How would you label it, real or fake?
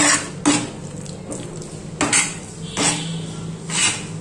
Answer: real